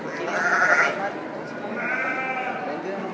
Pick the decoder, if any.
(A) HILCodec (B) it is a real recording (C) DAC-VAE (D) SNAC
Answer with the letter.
B